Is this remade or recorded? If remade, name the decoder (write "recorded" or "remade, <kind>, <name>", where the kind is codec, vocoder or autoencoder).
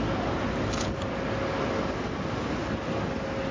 recorded